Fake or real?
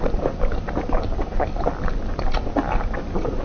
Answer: real